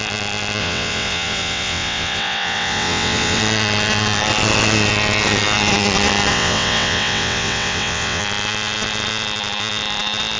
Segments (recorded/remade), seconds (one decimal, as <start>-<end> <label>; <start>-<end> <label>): 0.0-0.6 recorded; 0.6-3.4 remade; 3.4-6.3 recorded; 6.3-8.2 remade; 8.2-10.4 recorded